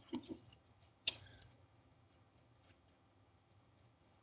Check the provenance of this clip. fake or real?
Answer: fake